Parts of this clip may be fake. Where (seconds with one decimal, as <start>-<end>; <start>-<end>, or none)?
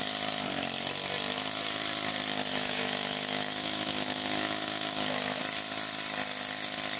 2.5-5.4